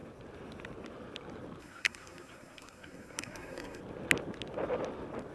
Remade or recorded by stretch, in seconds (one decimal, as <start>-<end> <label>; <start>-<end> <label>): 0.0-1.6 recorded; 1.6-3.8 remade; 3.8-5.3 recorded